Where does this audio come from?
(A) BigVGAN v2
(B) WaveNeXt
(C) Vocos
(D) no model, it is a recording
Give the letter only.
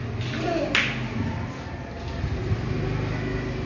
D